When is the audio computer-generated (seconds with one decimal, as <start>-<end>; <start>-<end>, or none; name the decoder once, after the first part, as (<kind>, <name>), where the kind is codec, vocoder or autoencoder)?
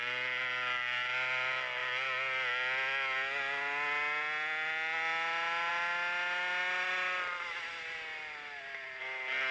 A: none